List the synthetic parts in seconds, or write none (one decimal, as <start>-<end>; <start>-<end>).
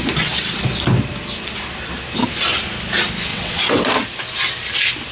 3.3-3.9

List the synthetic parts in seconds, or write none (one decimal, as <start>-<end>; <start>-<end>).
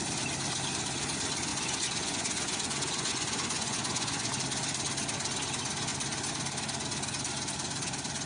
1.5-4.3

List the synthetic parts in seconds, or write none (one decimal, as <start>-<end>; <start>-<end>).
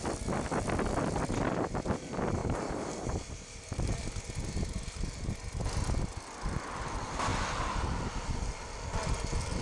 2.4-4.0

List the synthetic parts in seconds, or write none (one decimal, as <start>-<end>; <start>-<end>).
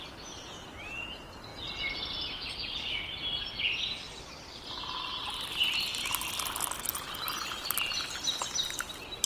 none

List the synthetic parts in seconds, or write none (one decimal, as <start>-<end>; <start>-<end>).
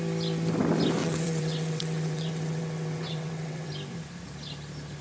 1.0-3.7